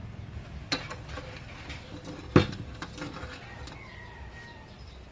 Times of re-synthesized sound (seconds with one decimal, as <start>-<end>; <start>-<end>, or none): none